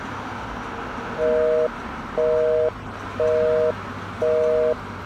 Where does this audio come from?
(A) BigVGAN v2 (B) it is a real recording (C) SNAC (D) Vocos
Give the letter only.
B